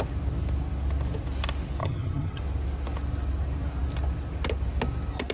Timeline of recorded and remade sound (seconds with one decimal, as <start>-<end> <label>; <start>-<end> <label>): 0.0-1.8 recorded; 1.8-2.4 remade; 2.4-5.3 recorded